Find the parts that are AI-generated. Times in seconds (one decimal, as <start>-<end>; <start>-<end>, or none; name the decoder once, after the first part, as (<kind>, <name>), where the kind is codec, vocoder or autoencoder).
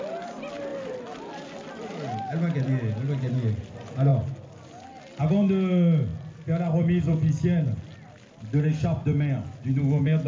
0.7-1.9 (vocoder, BigVGAN v2)